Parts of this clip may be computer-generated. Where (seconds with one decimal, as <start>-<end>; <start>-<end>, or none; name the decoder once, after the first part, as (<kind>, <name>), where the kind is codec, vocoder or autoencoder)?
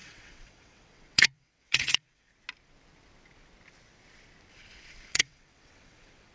0.0-2.3 (vocoder, WaveNeXt); 5.1-6.3